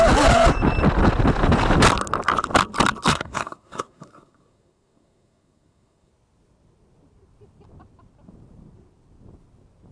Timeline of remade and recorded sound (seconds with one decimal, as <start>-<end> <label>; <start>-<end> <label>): 0.0-3.1 recorded; 3.1-6.1 remade; 6.1-9.9 recorded